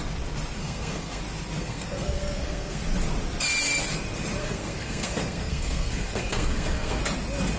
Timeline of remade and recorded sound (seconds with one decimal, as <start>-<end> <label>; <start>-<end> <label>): 0.0-0.6 recorded; 0.6-1.2 remade; 1.2-1.6 recorded; 1.6-2.8 remade; 2.8-4.4 recorded; 4.4-7.0 remade; 7.0-7.6 recorded